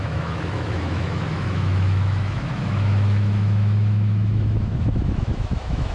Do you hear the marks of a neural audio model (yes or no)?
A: yes